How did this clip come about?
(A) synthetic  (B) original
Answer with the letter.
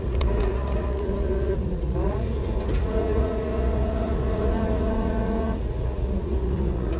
A